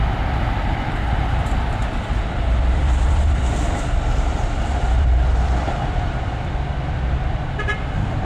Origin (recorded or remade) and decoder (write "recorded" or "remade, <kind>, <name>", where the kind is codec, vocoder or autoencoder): remade, vocoder, BigVGAN v2